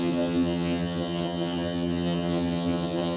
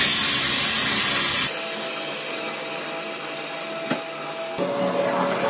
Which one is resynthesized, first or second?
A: first